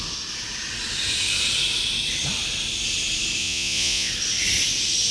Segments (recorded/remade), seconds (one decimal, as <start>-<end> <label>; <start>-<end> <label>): 0.0-3.4 recorded; 3.4-4.1 remade; 4.1-5.1 recorded